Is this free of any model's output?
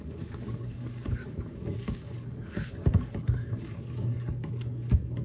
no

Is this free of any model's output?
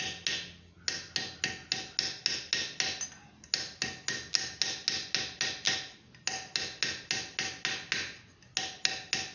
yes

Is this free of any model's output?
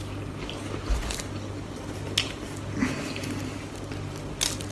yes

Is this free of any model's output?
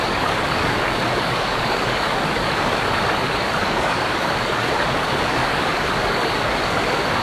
no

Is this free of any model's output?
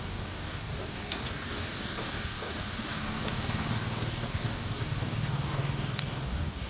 no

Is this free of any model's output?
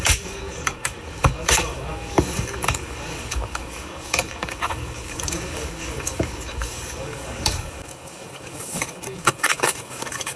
no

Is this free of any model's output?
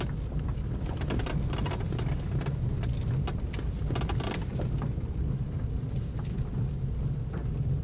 yes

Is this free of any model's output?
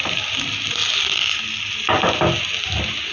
yes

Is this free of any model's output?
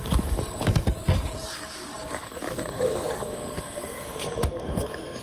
no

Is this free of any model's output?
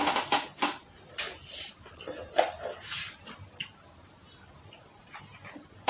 yes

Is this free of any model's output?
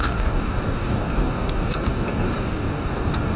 no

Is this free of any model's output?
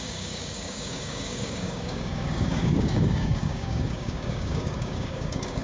no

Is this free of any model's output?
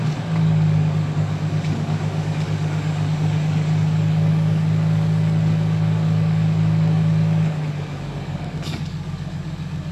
no